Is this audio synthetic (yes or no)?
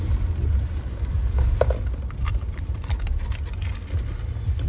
no